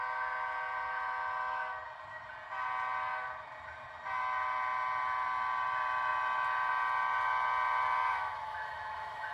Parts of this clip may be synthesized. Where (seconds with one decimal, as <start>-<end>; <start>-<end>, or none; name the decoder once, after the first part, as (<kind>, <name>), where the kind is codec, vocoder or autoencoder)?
8.1-9.3 (autoencoder, DAC-VAE)